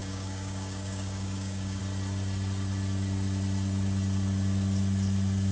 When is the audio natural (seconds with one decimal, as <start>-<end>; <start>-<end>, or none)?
1.8-5.5